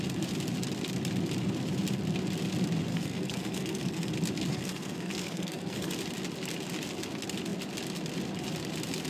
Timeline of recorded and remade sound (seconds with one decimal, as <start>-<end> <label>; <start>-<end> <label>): 0.0-2.9 recorded; 2.9-4.1 remade; 4.1-4.5 recorded; 4.5-5.9 remade; 5.9-9.1 recorded